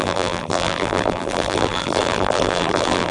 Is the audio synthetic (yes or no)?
yes